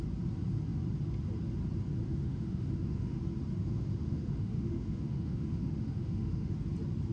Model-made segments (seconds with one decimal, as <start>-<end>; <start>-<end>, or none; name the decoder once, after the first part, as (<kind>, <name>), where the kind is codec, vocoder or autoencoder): 2.0-3.2 (autoencoder, DAC-VAE); 3.6-6.5